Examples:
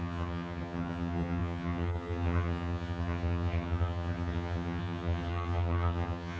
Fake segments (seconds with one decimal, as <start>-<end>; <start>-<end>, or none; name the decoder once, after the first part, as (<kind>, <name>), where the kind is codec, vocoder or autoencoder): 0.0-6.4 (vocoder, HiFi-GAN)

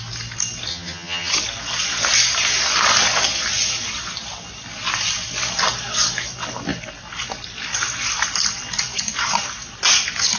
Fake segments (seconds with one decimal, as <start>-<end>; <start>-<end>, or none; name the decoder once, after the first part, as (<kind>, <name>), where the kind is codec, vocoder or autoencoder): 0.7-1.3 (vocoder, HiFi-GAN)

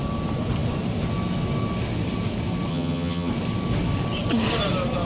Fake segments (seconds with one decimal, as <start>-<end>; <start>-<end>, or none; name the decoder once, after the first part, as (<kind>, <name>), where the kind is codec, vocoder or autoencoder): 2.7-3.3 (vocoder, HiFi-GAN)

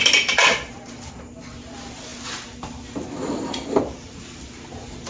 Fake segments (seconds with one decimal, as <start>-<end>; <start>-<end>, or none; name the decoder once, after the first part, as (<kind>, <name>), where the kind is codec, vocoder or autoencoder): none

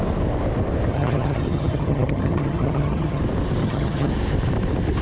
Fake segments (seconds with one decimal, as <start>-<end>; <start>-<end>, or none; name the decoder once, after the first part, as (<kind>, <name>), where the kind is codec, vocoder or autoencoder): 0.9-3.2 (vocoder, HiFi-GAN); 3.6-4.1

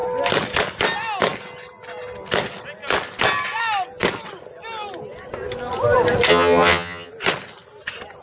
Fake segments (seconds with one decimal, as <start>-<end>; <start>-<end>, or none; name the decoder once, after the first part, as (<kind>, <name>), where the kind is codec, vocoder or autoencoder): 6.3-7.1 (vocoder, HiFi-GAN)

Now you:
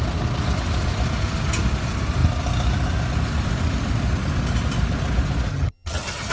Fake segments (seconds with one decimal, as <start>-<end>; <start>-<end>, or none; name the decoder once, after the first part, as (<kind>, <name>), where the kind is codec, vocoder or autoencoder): 5.5-6.3 (vocoder, HiFi-GAN)